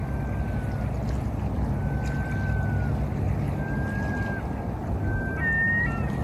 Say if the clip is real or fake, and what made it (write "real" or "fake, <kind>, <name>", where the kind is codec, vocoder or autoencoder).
real